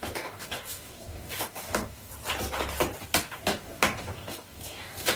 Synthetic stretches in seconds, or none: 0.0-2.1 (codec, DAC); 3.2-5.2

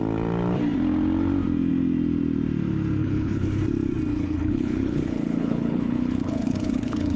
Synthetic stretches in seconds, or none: 3.0-3.6 (codec, HILCodec); 4.1-7.2

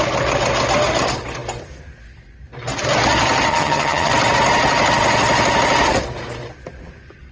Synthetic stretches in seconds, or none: 3.5-4.1 (vocoder, HiFi-GAN)

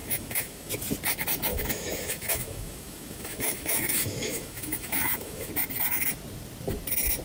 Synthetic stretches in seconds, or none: 0.0-0.7 (autoencoder, DAC-VAE); 1.5-5.5

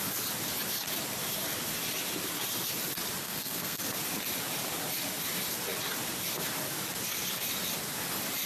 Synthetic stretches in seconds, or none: 3.2-3.8 (codec, SNAC)